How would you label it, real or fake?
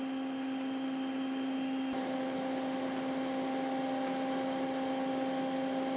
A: real